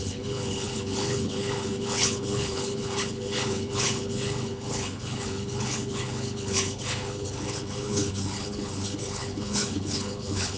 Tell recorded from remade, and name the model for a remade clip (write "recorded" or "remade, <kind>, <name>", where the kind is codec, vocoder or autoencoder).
remade, codec, HILCodec